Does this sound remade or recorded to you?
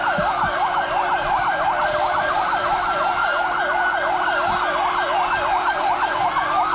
remade